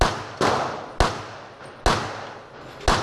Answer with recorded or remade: recorded